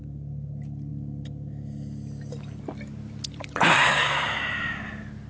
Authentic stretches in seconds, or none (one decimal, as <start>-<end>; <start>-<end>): 0.0-5.3